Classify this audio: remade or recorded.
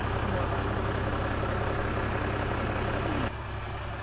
recorded